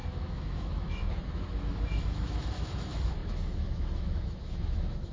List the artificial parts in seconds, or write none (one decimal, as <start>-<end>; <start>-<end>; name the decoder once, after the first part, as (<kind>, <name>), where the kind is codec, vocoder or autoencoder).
0.0-5.1 (autoencoder, DAC-VAE)

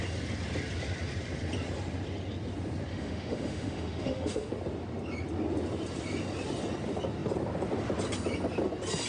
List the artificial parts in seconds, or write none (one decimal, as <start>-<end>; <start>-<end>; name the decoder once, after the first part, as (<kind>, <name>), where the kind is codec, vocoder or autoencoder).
2.9-4.5 (autoencoder, DAC-VAE)